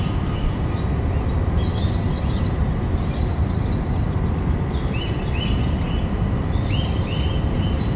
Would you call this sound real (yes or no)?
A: yes